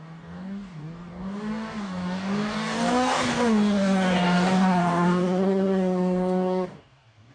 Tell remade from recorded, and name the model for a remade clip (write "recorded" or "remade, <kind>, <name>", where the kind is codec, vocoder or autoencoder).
remade, codec, DAC